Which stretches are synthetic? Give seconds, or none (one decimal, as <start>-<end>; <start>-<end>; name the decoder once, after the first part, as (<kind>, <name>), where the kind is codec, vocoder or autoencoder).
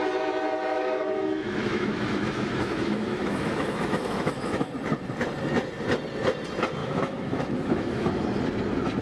0.7-4.7 (autoencoder, DAC-VAE); 6.8-8.1